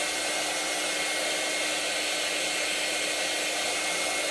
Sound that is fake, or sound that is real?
real